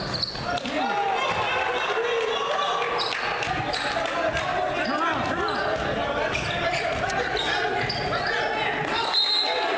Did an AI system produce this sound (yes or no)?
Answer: no